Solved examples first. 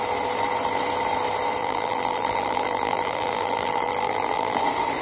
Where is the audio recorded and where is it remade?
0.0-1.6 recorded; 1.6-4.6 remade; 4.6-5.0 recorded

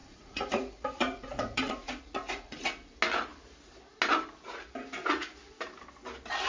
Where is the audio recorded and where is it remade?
0.0-2.6 remade; 2.6-6.5 recorded